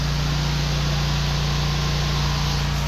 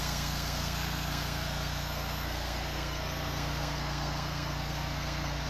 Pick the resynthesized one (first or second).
second